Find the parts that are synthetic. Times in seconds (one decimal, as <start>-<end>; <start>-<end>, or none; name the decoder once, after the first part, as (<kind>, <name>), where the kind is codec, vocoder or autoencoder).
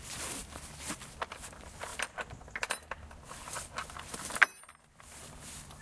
0.0-0.4 (vocoder, BigVGAN v2); 1.5-1.9; 5.0-5.8